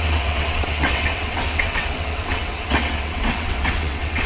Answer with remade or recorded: remade